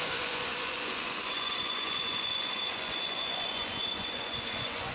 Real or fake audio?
fake